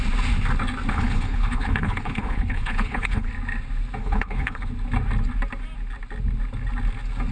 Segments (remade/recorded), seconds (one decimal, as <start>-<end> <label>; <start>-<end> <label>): 0.0-0.9 recorded; 0.9-3.3 remade; 3.3-4.0 recorded; 4.0-4.7 remade; 4.7-7.3 recorded

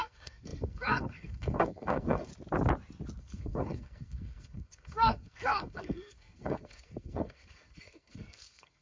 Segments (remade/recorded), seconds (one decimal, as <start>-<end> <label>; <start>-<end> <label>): 0.0-2.3 remade; 2.3-3.2 recorded; 3.2-8.8 remade

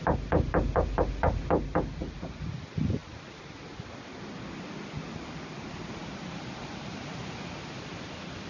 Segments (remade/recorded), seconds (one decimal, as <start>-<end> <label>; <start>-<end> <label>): 0.0-8.5 recorded

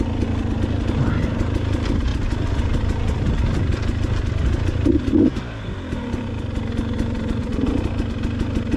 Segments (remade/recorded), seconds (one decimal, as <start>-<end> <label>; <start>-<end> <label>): 0.0-8.8 recorded

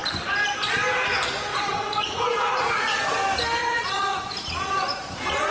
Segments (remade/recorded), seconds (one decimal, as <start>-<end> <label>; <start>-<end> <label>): 0.0-1.5 recorded; 1.5-3.0 remade; 3.0-3.6 recorded; 3.6-5.5 remade

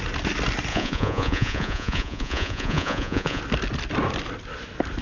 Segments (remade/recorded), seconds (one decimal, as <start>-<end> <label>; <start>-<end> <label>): 0.0-0.7 recorded; 0.7-3.4 remade; 3.4-5.0 recorded

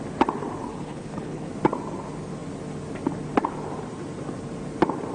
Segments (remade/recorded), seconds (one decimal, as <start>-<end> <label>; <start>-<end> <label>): 0.0-0.6 recorded; 0.6-1.5 remade; 1.5-5.1 recorded

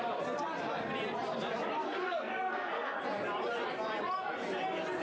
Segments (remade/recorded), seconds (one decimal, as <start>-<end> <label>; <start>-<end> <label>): 0.0-1.8 recorded; 1.8-3.0 remade; 3.0-5.0 recorded